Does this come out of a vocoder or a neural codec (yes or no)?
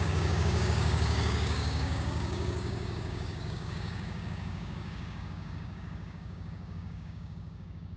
yes